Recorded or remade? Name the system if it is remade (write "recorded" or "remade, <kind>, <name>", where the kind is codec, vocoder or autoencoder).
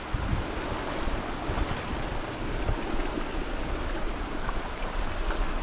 recorded